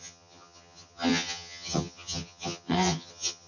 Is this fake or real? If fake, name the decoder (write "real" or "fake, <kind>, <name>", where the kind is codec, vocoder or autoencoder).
fake, vocoder, HiFi-GAN